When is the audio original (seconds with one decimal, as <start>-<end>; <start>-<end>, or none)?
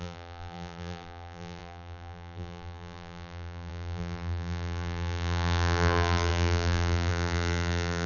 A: none